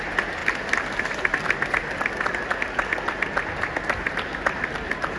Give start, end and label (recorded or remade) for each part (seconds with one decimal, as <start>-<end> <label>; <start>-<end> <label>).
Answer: 0.0-5.2 recorded